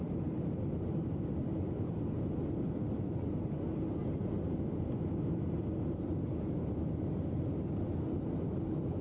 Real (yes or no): yes